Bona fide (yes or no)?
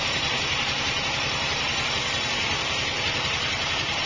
no